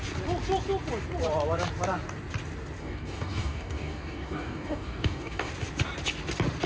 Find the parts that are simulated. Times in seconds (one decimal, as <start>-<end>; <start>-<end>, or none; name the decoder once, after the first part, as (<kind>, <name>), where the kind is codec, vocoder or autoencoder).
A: 2.8-5.5 (codec, DAC)